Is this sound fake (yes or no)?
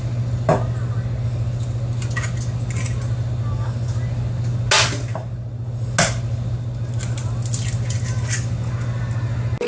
no